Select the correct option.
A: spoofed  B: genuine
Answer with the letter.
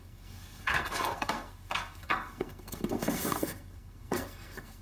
A